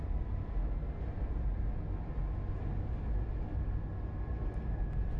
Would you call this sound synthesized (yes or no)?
no